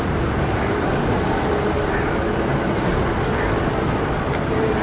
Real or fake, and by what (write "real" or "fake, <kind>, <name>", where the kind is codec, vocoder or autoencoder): real